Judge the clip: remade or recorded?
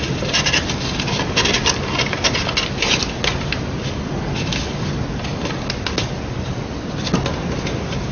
recorded